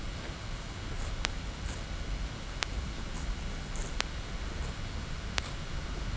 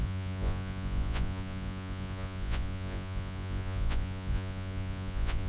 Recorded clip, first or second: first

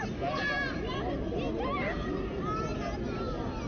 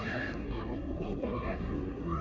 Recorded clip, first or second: first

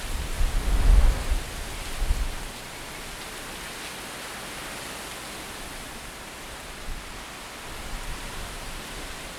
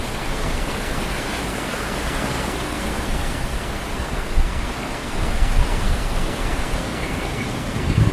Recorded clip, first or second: first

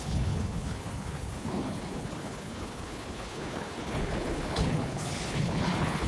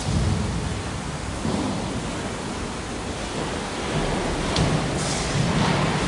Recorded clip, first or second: second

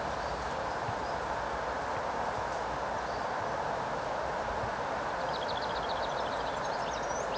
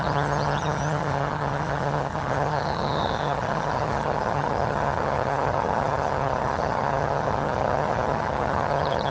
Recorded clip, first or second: first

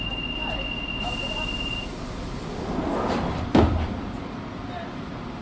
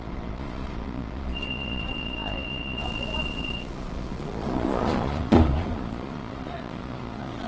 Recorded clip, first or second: first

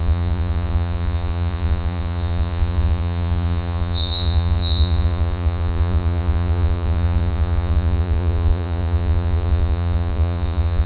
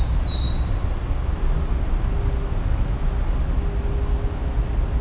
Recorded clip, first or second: second